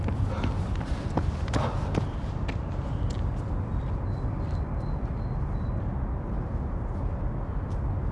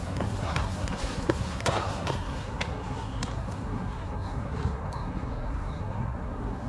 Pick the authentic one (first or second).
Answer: first